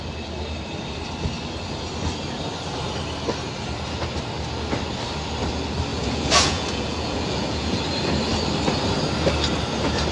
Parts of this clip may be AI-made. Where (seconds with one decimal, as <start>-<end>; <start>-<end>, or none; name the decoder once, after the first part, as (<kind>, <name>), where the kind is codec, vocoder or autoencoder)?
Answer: 5.9-7.8 (vocoder, Vocos)